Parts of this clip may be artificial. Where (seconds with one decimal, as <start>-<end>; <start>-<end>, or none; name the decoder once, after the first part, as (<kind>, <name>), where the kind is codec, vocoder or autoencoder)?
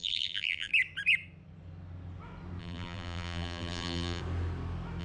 0.0-0.7 (vocoder, BigVGAN v2); 2.6-4.2